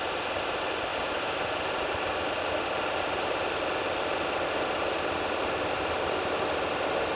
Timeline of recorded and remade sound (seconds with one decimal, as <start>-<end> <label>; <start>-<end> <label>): 0.0-7.1 recorded